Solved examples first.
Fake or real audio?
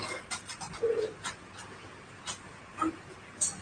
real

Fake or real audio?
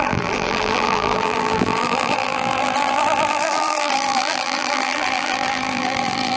fake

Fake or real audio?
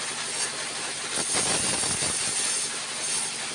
real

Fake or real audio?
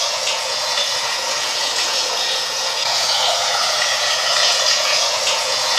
fake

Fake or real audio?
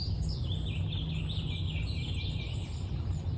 real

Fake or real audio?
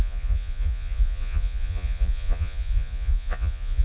fake